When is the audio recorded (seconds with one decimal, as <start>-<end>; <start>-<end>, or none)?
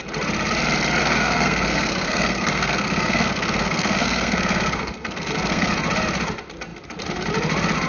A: 0.0-1.0; 5.7-7.9